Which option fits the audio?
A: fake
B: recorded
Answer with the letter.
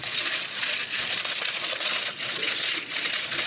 A